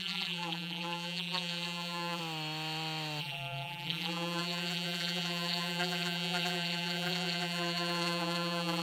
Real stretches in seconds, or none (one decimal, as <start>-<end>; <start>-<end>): 2.2-3.2